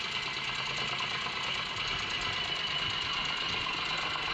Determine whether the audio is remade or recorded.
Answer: recorded